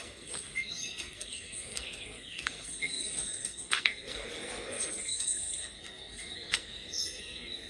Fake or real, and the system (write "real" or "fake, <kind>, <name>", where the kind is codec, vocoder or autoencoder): fake, codec, SNAC